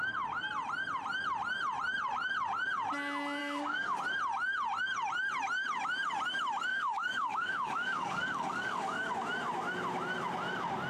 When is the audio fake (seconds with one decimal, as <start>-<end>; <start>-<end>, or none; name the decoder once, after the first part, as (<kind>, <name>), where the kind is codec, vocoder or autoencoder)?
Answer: 3.4-4.0 (codec, DAC); 6.7-9.1